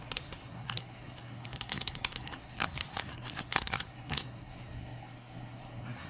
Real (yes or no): no